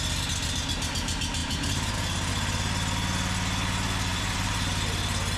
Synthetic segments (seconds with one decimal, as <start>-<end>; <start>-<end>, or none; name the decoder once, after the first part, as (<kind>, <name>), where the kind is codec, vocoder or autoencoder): 1.4-2.3 (vocoder, BigVGAN v2); 4.1-4.7